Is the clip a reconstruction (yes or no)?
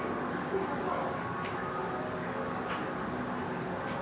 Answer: no